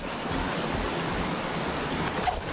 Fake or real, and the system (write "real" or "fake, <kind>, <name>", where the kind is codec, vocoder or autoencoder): real